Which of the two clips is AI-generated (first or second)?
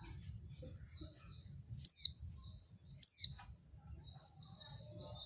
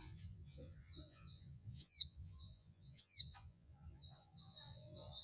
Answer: second